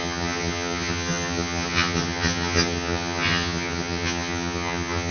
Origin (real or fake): fake